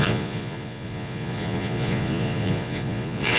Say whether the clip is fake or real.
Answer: fake